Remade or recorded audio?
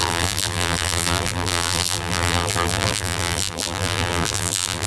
remade